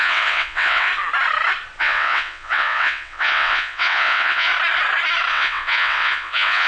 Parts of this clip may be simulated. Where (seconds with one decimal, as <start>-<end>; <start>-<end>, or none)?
0.0-0.9; 1.8-4.5; 5.3-6.7